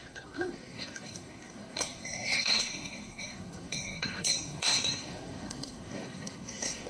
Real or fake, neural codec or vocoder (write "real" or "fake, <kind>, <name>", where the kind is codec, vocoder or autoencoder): fake, codec, SNAC